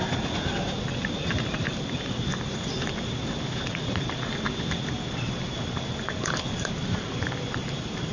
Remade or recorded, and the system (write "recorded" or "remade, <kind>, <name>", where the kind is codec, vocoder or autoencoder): remade, vocoder, BigVGAN v2